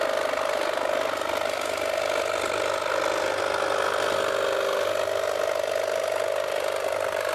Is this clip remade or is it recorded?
recorded